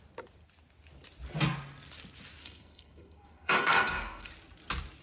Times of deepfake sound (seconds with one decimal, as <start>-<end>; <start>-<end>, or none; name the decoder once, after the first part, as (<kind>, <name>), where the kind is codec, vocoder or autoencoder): 2.4-4.3 (codec, SNAC)